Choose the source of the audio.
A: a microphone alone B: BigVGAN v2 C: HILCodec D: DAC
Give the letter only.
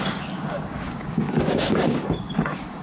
D